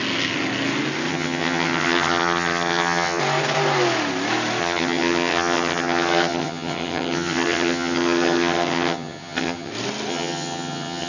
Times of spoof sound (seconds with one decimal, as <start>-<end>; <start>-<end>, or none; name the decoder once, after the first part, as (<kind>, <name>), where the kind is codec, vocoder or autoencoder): 1.1-3.2 (vocoder, HiFi-GAN); 4.6-9.7; 10.1-11.1

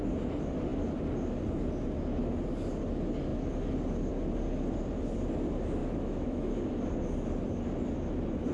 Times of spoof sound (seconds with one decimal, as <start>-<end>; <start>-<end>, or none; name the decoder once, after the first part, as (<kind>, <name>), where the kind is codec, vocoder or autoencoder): 5.8-6.6 (autoencoder, DAC-VAE)

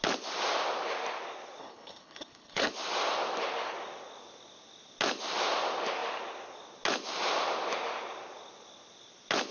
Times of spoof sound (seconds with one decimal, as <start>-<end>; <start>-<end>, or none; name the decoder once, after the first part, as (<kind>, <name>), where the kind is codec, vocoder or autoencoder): 1.6-2.7 (codec, HILCodec)

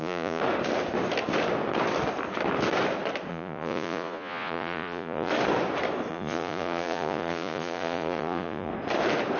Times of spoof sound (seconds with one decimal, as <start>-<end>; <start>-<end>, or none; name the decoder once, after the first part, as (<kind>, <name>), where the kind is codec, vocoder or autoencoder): 0.0-0.4 (vocoder, Vocos); 3.3-5.3; 6.1-8.7

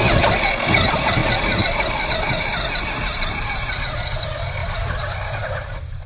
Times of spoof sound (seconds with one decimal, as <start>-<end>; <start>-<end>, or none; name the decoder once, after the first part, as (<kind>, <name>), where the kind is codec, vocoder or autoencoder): 4.6-6.1 (vocoder, BigVGAN v2)

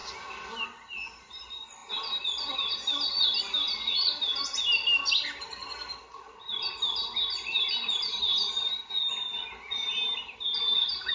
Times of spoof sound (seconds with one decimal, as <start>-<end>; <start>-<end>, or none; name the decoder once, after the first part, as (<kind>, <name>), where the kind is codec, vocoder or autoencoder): 8.3-8.9 (vocoder, BigVGAN v2)

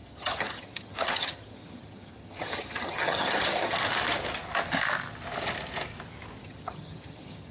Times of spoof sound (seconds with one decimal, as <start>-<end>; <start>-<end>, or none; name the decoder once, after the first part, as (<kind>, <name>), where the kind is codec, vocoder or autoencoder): 0.0-3.8 (vocoder, HiFi-GAN); 6.4-7.5